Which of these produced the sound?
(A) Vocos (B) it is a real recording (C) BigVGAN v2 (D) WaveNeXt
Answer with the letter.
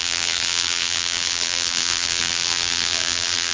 C